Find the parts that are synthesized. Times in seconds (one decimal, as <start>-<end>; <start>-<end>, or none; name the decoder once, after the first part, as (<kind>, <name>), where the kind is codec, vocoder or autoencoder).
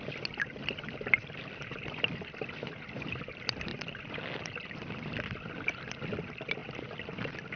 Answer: none